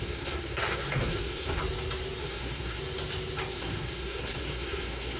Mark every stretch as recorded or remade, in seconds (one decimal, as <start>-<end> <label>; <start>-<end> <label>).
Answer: 0.0-1.6 remade; 1.6-2.2 recorded; 2.2-2.8 remade; 2.8-3.5 recorded; 3.5-5.2 remade

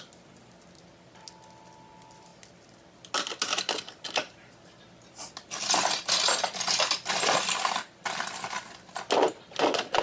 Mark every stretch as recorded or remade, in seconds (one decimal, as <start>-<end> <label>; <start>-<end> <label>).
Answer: 0.0-10.0 recorded

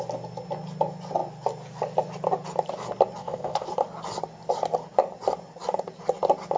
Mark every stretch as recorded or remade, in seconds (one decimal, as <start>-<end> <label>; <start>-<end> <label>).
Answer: 0.0-3.2 recorded; 3.2-3.7 remade; 3.7-6.6 recorded

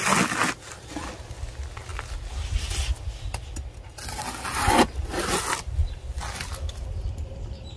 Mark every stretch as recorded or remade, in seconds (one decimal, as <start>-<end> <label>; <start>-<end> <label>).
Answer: 0.0-7.8 recorded

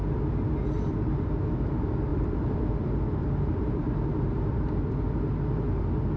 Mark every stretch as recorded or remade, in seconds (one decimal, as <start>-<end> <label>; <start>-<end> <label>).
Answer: 0.0-2.1 recorded; 2.1-2.7 remade; 2.7-3.2 recorded; 3.2-4.6 remade; 4.6-6.2 recorded

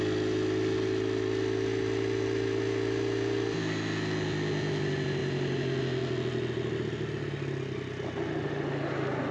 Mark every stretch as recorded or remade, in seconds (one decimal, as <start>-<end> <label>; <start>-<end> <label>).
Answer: 0.0-9.3 recorded

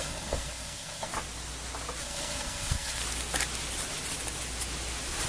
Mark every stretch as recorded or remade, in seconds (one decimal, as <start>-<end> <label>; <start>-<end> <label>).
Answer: 0.0-1.1 remade; 1.1-2.0 recorded; 2.0-3.0 remade; 3.0-5.3 recorded